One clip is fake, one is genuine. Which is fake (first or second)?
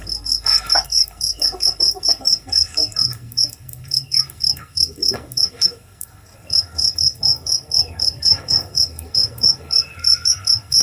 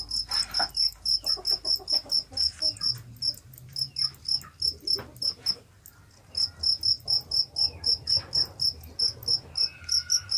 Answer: first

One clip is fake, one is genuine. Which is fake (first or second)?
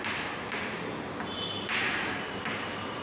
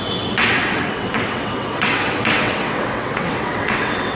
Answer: second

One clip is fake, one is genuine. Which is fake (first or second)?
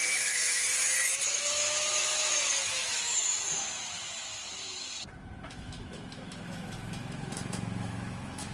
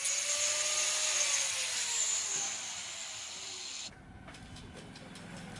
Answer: first